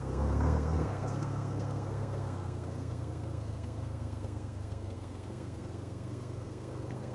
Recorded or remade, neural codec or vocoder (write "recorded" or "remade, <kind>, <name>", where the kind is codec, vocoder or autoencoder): remade, codec, SNAC